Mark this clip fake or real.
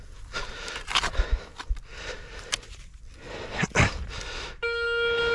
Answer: real